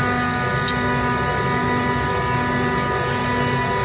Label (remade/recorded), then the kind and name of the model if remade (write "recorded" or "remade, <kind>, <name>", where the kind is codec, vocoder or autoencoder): recorded